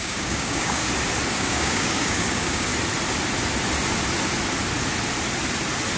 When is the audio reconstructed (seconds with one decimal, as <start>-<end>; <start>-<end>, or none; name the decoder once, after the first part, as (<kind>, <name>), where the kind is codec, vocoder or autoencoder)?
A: 0.0-0.8 (codec, DAC); 1.3-2.7